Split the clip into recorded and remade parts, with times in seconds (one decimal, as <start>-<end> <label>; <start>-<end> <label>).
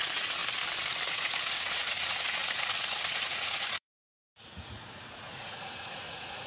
0.0-0.4 remade; 0.4-1.1 recorded; 1.1-6.5 remade